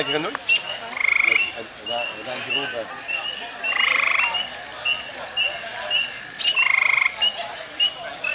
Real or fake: real